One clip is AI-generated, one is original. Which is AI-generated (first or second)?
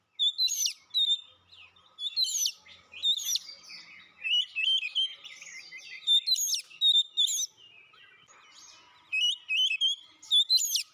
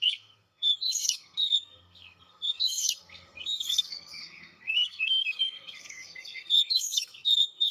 second